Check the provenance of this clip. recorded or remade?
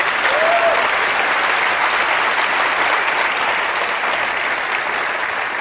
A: recorded